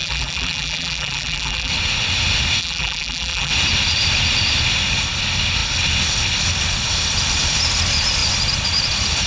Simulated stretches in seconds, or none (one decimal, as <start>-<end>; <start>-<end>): 0.0-1.7; 2.6-3.5